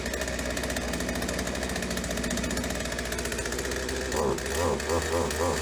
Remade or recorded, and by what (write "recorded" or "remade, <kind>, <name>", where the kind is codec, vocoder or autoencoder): recorded